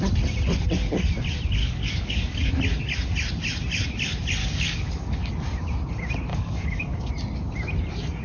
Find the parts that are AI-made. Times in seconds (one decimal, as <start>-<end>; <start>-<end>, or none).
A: 1.6-2.5; 4.4-5.3; 6.3-7.1

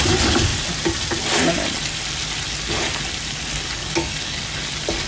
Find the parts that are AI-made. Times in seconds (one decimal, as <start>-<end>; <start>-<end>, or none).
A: 3.8-4.4